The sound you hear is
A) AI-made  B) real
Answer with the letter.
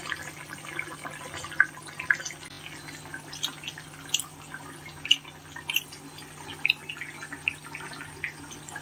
B